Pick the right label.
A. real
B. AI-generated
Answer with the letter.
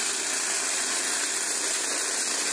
A